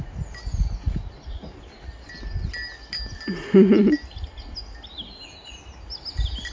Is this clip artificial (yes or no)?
no